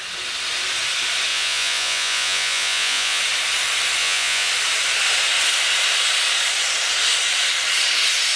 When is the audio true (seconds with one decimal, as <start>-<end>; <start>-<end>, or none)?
0.0-1.3; 3.2-4.0; 4.5-8.4